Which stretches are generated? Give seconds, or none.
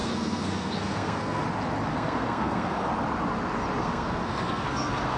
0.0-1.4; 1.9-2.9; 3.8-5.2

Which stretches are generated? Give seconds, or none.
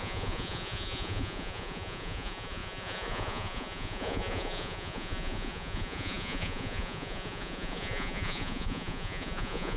0.0-9.8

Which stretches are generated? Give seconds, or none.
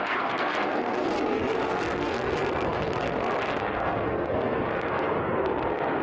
0.0-6.0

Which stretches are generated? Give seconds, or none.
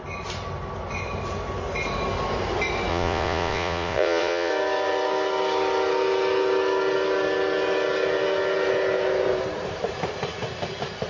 2.9-4.5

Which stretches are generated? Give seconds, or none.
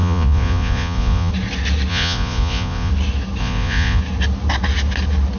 0.0-1.3; 1.9-2.9; 3.4-4.0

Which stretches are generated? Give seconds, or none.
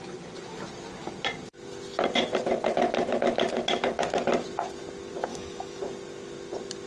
5.3-5.8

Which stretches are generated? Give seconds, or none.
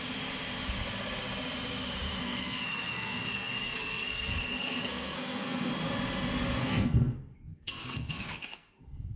2.2-5.7; 6.6-9.2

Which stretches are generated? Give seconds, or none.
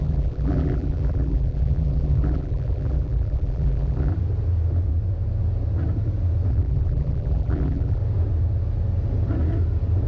0.0-4.1; 6.5-8.0